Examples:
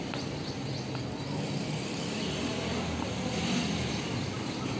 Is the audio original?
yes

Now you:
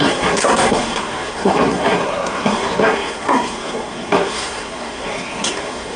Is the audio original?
no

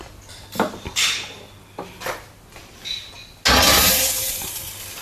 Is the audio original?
yes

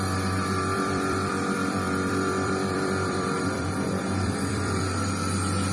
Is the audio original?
no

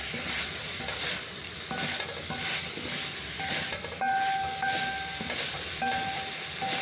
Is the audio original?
yes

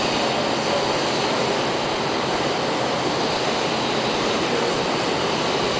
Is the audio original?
yes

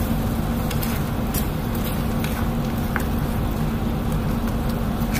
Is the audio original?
yes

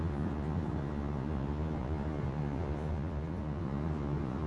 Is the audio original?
no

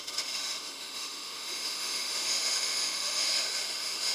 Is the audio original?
no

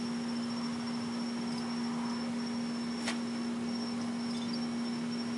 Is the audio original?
yes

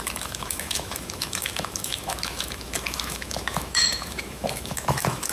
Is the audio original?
no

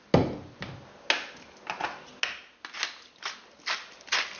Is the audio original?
yes